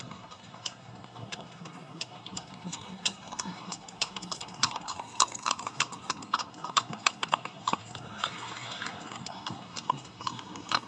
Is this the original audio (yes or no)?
no